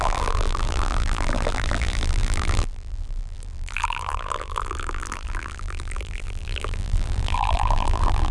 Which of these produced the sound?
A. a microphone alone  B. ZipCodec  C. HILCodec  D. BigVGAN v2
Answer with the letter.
D